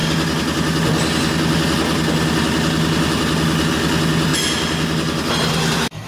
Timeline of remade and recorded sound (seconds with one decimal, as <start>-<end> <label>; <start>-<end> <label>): 0.0-6.1 recorded